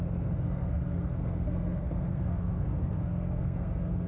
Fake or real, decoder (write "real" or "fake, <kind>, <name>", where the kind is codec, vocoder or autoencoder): fake, codec, SNAC